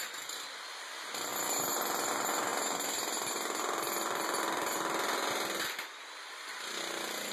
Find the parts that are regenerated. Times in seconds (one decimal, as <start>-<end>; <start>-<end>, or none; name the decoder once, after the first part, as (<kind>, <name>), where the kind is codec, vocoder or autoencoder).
none